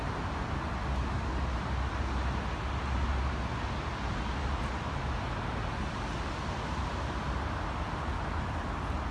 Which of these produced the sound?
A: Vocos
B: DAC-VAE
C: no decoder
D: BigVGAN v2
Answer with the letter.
C